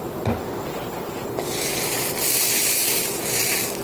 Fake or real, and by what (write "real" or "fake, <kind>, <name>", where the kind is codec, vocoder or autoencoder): fake, vocoder, BigVGAN v2